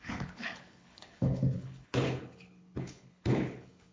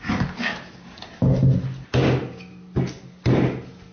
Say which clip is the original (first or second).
second